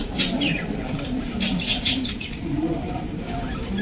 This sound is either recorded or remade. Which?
remade